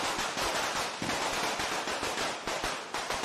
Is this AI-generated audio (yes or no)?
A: no